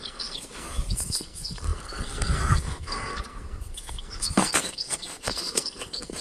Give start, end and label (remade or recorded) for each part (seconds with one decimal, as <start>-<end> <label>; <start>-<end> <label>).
0.0-6.2 remade